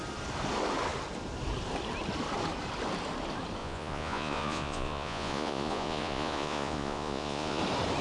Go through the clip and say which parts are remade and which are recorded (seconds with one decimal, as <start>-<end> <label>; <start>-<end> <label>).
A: 0.0-3.6 recorded; 3.6-7.6 remade; 7.6-8.0 recorded